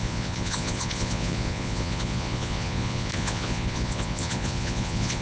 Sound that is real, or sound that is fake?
fake